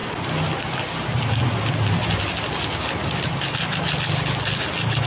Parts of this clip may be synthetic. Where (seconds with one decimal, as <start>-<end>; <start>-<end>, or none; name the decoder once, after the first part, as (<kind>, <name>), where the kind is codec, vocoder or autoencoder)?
none